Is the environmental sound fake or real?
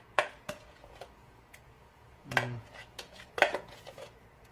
fake